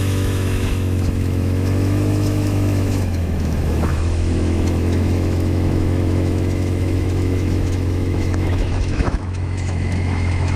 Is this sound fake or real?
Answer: fake